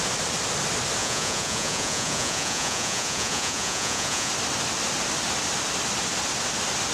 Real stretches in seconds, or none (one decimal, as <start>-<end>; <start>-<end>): 0.0-1.0; 4.3-6.9